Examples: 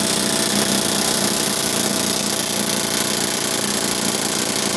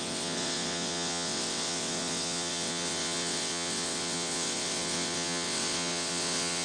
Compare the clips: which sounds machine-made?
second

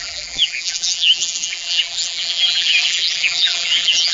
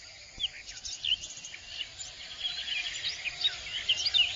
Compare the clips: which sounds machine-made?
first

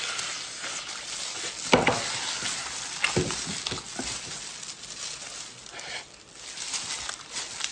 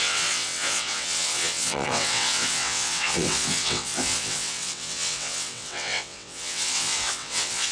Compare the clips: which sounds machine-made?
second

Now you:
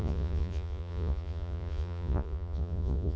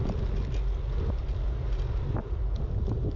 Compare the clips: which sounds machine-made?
first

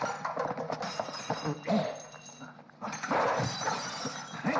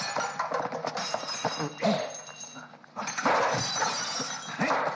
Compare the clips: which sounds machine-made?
first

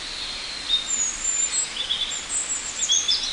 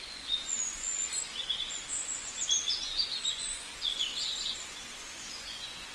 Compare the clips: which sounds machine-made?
second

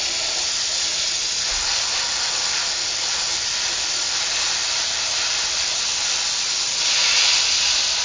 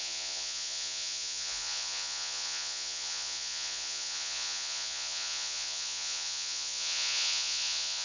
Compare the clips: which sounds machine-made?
second